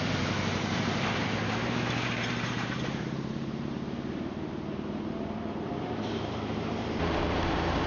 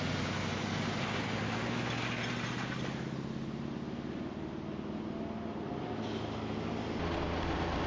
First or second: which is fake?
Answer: first